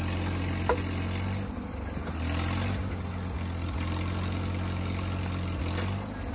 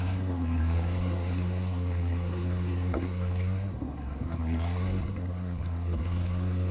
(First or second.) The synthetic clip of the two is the second